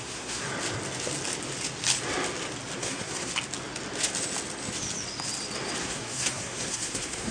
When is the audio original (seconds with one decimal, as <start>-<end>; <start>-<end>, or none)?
0.5-2.8; 3.3-5.8